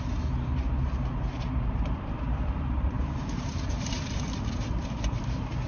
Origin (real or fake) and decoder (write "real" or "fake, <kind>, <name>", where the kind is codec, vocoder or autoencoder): fake, vocoder, BigVGAN v2